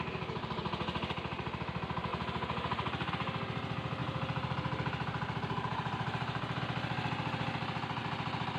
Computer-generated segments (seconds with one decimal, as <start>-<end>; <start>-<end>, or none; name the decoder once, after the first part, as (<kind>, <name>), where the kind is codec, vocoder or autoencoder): 2.1-3.1 (vocoder, BigVGAN v2); 4.0-6.6